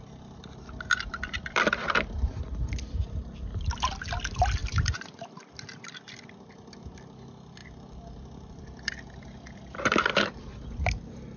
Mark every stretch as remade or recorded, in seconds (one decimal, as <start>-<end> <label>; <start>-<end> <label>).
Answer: 0.0-4.6 recorded; 4.6-5.5 remade; 5.5-11.4 recorded